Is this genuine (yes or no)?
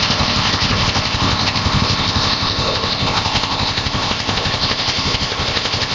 no